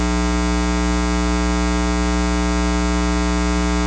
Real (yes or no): yes